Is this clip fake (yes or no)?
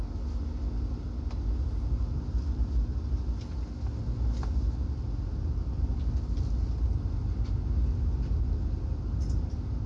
no